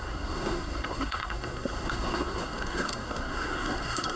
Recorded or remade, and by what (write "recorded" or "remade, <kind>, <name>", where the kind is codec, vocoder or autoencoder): remade, codec, SNAC